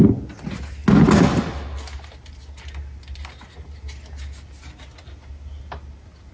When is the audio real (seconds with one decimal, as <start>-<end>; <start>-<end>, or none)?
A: 0.0-6.3